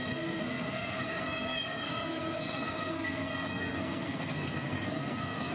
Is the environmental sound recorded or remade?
remade